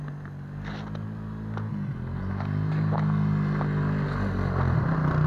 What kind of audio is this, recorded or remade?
recorded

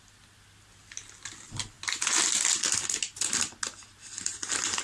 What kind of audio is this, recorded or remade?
recorded